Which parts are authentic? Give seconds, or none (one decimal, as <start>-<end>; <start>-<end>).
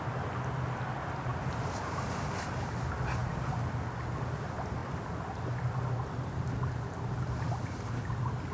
0.0-1.3; 2.1-8.5